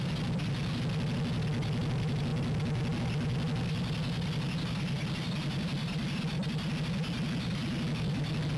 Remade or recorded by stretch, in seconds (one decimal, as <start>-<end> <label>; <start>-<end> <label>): 0.0-8.6 recorded